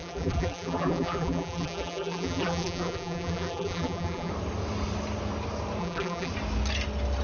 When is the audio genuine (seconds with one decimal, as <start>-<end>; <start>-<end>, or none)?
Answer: 4.3-5.8; 6.3-7.2

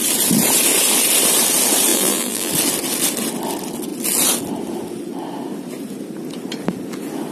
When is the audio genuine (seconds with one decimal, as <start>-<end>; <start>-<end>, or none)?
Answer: 0.0-1.9; 2.5-7.3